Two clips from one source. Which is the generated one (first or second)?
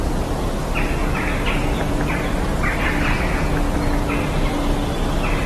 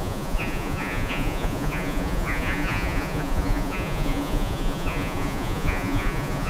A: second